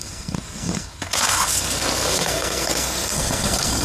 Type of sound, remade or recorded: remade